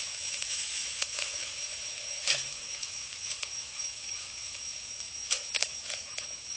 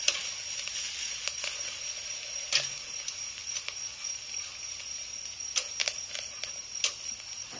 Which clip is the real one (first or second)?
second